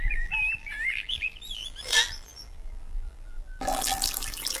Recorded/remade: remade